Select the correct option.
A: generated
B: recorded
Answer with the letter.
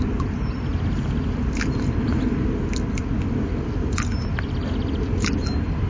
B